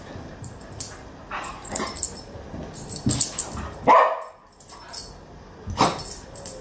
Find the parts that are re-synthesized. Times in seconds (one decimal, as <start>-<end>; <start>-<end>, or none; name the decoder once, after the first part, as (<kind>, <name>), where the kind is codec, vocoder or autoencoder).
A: 1.2-1.9 (vocoder, Vocos)